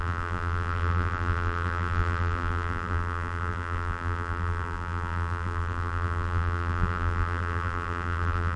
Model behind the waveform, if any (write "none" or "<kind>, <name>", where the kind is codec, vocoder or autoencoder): vocoder, BigVGAN v2